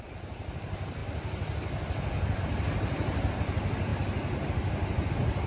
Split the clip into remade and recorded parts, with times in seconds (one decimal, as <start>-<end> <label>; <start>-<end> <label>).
0.0-1.0 recorded; 1.0-2.4 remade; 2.4-5.5 recorded